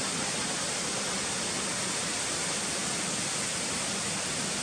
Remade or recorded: recorded